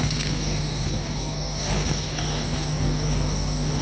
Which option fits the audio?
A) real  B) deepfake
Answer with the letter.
B